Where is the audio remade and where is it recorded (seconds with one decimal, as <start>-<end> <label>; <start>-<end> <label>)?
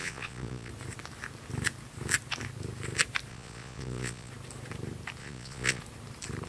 0.0-0.7 remade; 0.7-3.3 recorded; 3.3-4.3 remade; 4.3-5.2 recorded; 5.2-5.8 remade; 5.8-6.5 recorded